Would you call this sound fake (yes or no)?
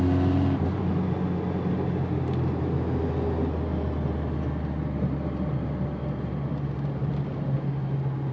no